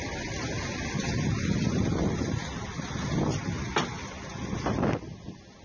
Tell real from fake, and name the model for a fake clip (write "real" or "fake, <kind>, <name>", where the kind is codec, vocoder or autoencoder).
real